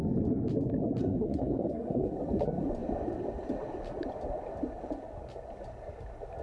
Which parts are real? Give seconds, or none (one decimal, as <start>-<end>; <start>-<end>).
0.0-1.0; 2.1-6.4